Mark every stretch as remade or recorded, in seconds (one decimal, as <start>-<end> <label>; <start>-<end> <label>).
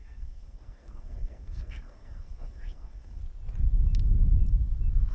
0.0-3.2 remade; 3.2-5.1 recorded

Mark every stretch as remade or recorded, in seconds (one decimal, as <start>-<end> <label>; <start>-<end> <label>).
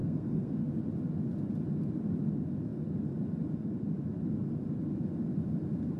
0.0-0.7 remade; 0.7-6.0 recorded